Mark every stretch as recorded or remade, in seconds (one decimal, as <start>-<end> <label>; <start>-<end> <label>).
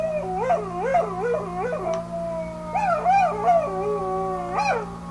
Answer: 0.0-5.1 recorded